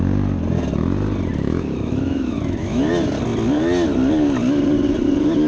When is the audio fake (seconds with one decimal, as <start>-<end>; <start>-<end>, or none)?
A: 1.3-2.9